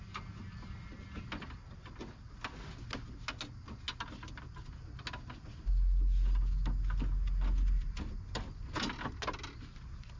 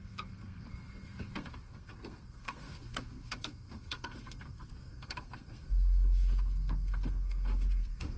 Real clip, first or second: first